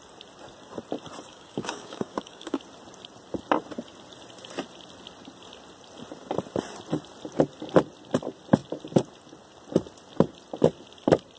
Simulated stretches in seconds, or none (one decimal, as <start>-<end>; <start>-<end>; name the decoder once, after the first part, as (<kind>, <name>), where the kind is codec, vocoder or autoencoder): 1.3-2.6 (codec, DAC)